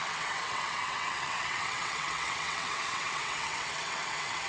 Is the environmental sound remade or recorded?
remade